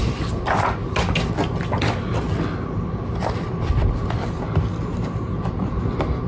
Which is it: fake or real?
real